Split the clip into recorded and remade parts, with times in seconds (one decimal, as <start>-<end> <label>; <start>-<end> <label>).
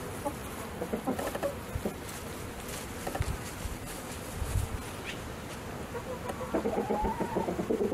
0.0-7.9 recorded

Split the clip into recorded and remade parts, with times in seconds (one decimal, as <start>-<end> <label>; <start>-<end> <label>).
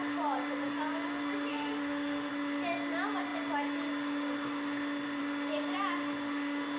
0.0-1.5 recorded; 1.5-2.3 remade; 2.3-6.8 recorded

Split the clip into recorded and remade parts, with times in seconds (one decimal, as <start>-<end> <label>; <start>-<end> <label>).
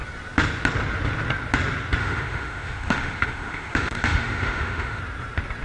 0.0-2.0 recorded; 2.0-5.0 remade; 5.0-5.6 recorded